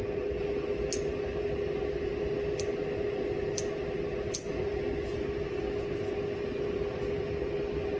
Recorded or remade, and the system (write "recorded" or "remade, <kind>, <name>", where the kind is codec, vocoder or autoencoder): recorded